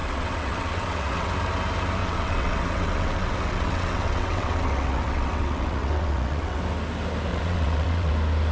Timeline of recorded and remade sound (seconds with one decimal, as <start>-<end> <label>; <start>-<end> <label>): 0.0-1.3 remade; 1.3-2.0 recorded; 2.0-6.6 remade; 6.6-7.3 recorded; 7.3-8.1 remade; 8.1-8.5 recorded